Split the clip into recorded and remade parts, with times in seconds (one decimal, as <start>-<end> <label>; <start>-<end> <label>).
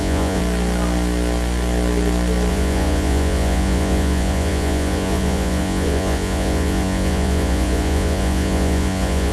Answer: 0.0-0.4 remade; 0.4-2.5 recorded; 2.5-9.3 remade